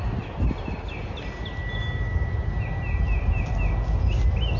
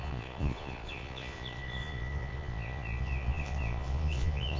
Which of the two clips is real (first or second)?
first